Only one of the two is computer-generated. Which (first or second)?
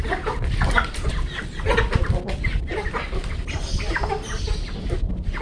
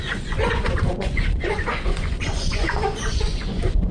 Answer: second